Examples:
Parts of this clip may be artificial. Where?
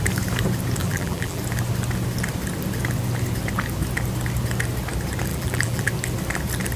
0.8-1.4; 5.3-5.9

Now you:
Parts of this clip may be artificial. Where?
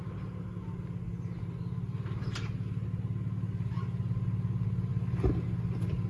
none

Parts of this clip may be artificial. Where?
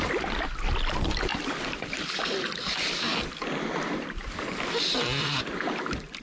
1.3-4.6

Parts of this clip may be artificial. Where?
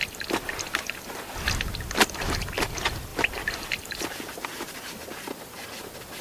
3.1-5.3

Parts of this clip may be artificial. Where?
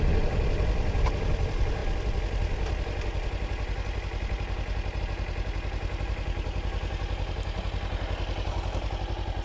none